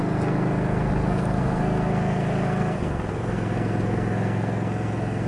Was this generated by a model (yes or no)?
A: yes